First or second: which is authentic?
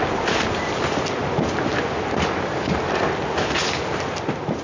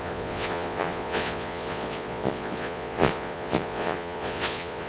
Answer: first